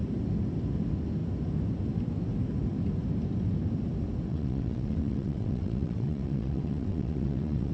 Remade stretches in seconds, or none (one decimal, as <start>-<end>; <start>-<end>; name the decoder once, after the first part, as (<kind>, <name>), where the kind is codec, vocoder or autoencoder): 4.3-7.7 (vocoder, WaveNeXt)